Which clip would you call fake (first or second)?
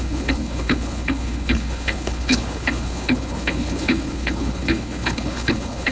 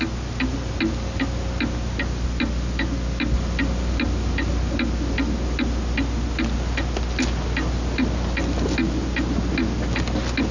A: first